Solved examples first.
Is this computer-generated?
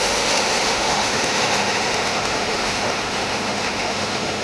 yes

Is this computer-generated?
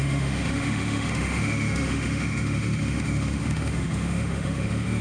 yes